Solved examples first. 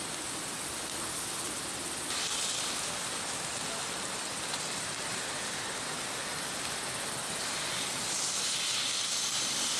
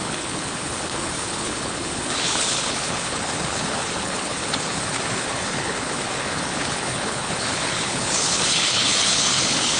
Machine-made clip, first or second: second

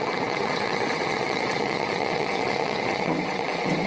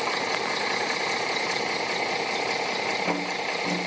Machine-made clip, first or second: first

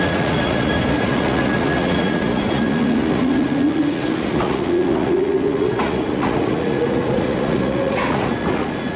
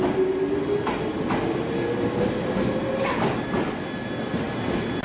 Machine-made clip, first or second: first